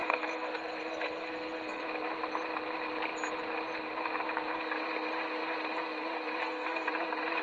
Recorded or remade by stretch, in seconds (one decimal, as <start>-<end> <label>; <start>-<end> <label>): 0.0-1.8 remade; 1.8-6.4 recorded; 6.4-6.9 remade; 6.9-7.4 recorded